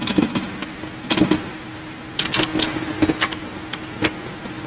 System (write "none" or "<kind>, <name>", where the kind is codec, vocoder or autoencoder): none